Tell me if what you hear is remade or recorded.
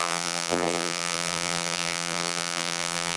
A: remade